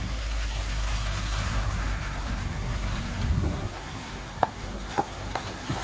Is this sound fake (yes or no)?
yes